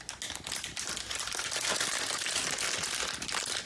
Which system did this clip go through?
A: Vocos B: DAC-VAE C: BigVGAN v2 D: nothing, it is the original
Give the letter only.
D